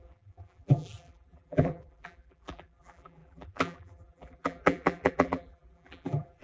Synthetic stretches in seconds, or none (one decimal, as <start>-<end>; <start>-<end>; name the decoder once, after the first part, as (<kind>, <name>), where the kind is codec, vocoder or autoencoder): 0.0-6.4 (vocoder, BigVGAN v2)